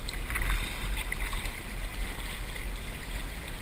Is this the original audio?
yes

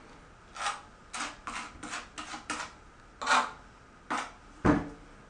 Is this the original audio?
yes